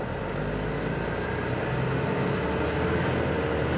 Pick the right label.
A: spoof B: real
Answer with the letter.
B